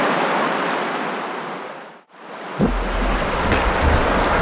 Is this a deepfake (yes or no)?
no